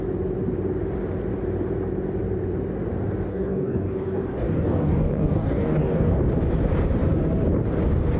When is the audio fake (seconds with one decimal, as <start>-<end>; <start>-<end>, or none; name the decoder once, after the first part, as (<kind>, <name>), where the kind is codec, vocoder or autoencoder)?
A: 3.3-6.2 (codec, DAC)